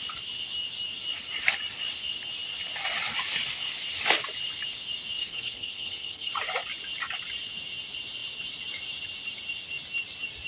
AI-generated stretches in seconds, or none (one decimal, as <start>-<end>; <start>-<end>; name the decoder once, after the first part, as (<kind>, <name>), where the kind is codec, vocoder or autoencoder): 5.2-6.3 (codec, HILCodec)